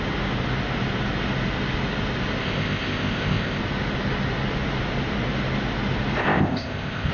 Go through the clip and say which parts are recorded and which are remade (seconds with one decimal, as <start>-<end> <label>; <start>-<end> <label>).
0.0-2.4 recorded; 2.4-3.6 remade; 3.6-6.2 recorded; 6.2-7.1 remade